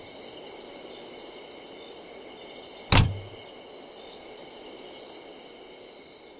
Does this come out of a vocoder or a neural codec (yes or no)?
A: no